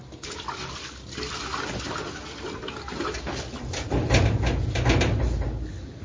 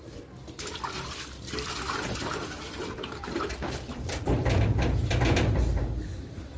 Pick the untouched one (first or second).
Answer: first